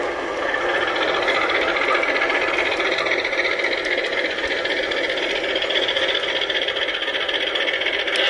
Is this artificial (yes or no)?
no